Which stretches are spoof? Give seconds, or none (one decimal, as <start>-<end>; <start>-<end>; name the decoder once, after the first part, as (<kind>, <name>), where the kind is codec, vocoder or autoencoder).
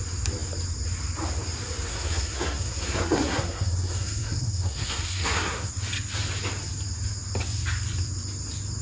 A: 1.9-5.7 (codec, SNAC)